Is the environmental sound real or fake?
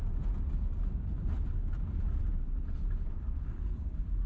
real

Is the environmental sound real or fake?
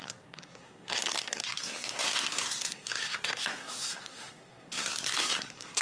fake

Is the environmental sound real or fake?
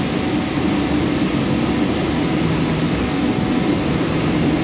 real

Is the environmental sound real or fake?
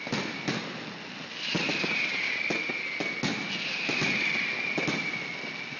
real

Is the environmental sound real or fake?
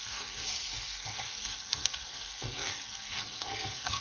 fake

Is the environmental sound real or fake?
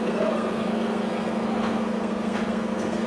fake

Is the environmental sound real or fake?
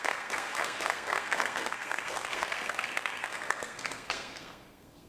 fake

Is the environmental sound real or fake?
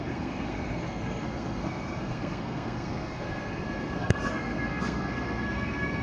fake